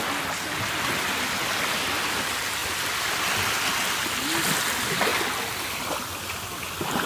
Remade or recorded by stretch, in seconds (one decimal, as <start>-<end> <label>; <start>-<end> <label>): 0.0-2.6 recorded; 2.6-3.1 remade; 3.1-7.1 recorded